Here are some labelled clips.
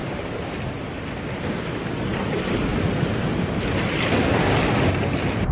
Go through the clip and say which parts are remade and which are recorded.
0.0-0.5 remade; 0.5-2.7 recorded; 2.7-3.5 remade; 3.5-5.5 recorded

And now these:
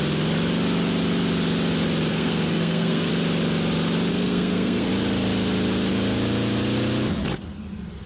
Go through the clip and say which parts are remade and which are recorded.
0.0-2.1 recorded; 2.1-3.1 remade; 3.1-4.1 recorded; 4.1-4.9 remade; 4.9-8.1 recorded

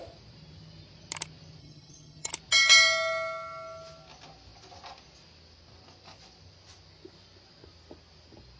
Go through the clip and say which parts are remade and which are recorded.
0.0-1.6 recorded; 1.6-2.3 remade; 2.3-8.6 recorded

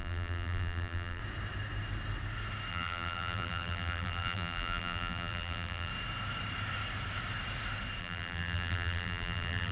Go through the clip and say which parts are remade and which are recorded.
0.0-1.2 remade; 1.2-2.7 recorded; 2.7-5.9 remade; 5.9-8.0 recorded; 8.0-9.7 remade

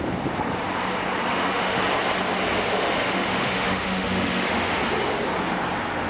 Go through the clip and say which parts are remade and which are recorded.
0.0-1.3 recorded; 1.3-1.8 remade; 1.8-2.7 recorded; 2.7-4.8 remade; 4.8-6.1 recorded

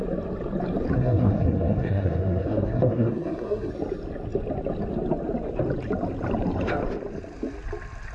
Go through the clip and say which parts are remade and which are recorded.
0.0-0.9 recorded; 0.9-3.7 remade; 3.7-8.1 recorded